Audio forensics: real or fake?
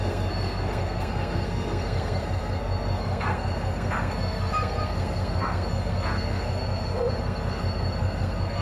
fake